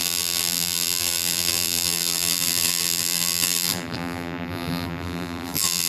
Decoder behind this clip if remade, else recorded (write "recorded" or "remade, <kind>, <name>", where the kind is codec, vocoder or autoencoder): remade, vocoder, BigVGAN v2